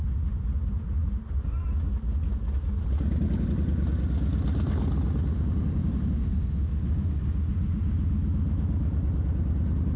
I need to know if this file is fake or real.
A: real